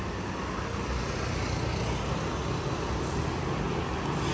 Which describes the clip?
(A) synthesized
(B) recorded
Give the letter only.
B